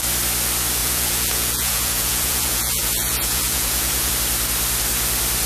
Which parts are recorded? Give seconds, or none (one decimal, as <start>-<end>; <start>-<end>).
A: 0.0-0.8; 4.1-5.5